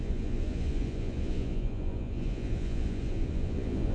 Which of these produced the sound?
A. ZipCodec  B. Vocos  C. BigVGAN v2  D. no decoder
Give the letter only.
B